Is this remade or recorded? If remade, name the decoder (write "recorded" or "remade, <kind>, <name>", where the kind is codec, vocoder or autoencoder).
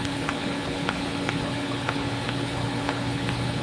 remade, codec, HILCodec